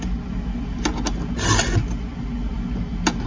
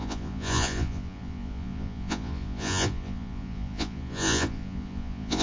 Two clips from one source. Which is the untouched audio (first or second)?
first